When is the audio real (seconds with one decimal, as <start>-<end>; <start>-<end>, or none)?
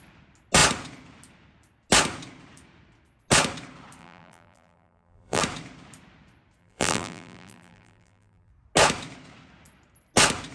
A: 0.0-4.0; 5.4-6.6; 8.5-10.5